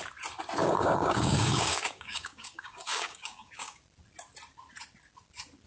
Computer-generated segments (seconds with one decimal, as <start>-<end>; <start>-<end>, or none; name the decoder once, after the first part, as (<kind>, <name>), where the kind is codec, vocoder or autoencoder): 0.6-3.8 (codec, DAC)